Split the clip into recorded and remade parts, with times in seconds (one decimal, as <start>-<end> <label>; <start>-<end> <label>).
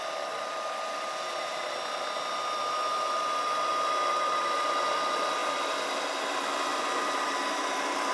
0.0-8.1 remade